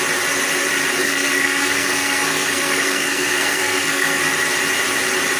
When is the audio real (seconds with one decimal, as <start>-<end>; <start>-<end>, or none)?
0.0-1.0; 4.2-5.4